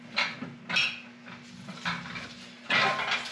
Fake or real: real